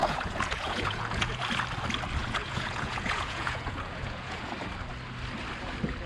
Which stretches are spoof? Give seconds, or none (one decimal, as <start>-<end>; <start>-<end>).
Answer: 0.0-1.4; 2.2-4.5